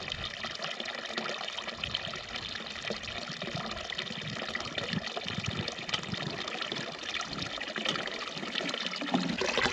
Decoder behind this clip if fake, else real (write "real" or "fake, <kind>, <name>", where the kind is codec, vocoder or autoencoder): real